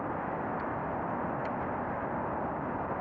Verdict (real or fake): real